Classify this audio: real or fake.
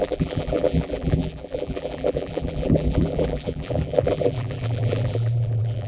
fake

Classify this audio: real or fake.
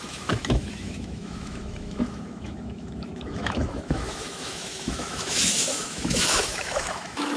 fake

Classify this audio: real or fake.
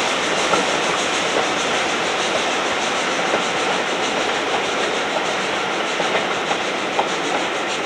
real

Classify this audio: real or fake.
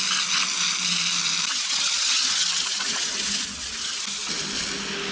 real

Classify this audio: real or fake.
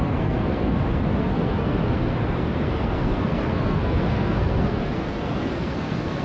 fake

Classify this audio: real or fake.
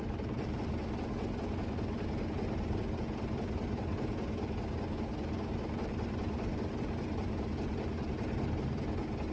real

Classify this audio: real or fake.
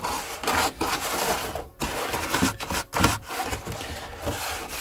real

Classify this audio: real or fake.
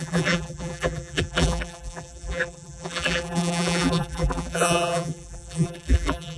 fake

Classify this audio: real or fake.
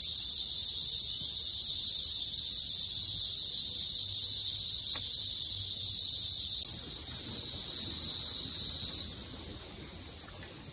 real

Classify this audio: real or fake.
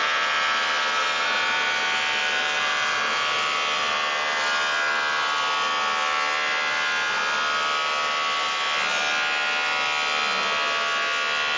real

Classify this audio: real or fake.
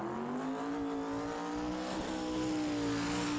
real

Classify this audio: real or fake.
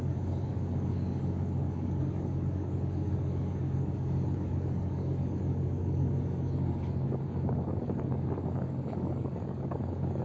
fake